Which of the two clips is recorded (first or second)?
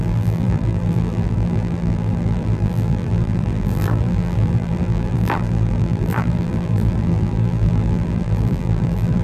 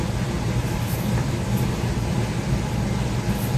second